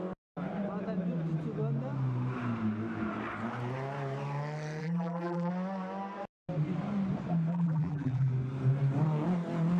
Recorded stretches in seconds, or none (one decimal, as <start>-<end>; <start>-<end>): 0.0-4.8; 5.5-7.5; 8.3-9.8